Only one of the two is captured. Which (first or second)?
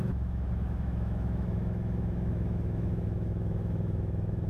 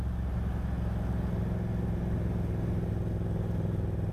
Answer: second